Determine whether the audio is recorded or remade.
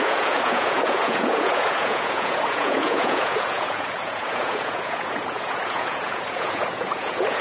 remade